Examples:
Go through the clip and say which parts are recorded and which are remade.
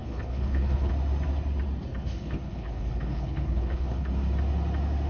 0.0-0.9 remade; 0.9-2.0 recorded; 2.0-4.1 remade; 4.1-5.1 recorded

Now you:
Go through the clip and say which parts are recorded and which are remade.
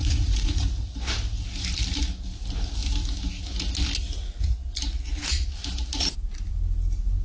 0.0-1.0 remade; 1.0-7.2 recorded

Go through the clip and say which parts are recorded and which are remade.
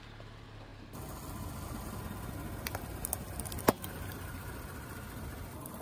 0.0-5.8 recorded